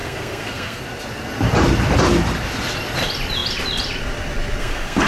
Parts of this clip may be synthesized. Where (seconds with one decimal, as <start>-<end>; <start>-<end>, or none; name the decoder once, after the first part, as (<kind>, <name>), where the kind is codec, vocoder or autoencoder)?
0.0-0.8 (codec, SNAC); 4.6-5.1